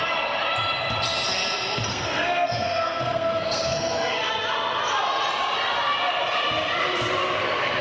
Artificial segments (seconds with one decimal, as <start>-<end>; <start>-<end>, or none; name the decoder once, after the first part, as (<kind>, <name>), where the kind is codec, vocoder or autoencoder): 1.9-4.3 (codec, SNAC)